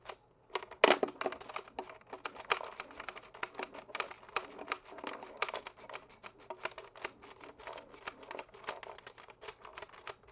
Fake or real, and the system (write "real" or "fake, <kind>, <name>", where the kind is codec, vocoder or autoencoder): real